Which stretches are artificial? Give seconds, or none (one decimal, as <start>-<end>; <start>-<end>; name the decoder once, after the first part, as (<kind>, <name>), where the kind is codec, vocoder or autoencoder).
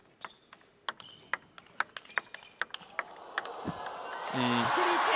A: none